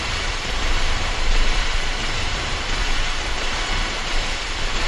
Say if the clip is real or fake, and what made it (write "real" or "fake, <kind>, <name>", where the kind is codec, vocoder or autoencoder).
fake, vocoder, BigVGAN v2